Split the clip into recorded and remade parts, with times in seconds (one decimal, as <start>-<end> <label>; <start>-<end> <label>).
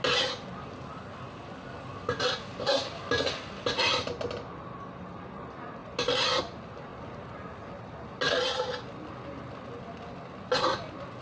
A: 0.0-11.2 recorded